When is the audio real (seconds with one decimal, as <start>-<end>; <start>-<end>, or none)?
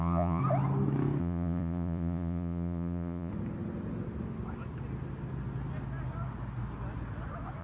0.4-1.2; 3.3-7.6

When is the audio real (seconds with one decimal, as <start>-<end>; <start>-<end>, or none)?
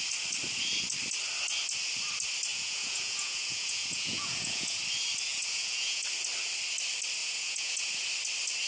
0.0-2.5; 4.8-5.3; 6.1-7.2; 7.9-8.7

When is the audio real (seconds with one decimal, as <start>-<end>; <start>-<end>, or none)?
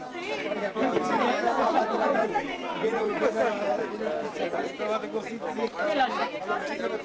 0.0-1.5; 3.2-7.0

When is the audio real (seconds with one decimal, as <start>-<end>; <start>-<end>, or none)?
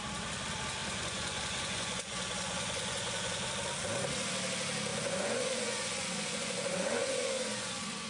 0.0-0.8; 3.5-4.9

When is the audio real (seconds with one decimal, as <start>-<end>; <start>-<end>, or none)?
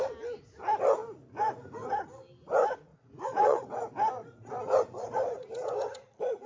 0.0-2.9; 3.6-6.5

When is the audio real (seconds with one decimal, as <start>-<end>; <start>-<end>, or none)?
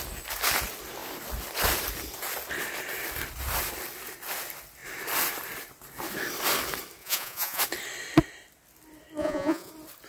0.0-7.0; 7.6-9.2; 9.7-10.1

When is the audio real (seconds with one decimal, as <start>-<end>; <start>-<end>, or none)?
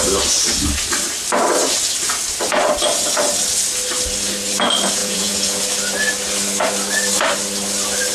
0.0-5.0; 5.6-8.1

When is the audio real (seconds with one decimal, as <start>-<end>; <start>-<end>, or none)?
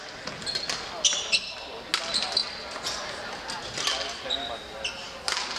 0.0-5.6